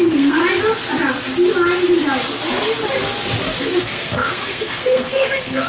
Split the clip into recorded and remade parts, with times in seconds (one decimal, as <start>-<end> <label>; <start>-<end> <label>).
0.0-0.4 remade; 0.4-3.8 recorded; 3.8-5.7 remade